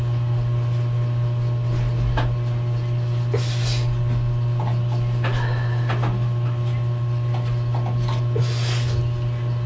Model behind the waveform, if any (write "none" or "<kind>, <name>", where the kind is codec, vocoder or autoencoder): none